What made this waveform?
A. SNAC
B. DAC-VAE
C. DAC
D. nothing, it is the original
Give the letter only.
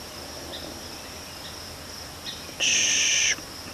D